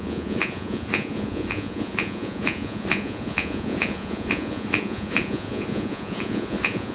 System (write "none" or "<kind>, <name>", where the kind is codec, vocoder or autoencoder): vocoder, Vocos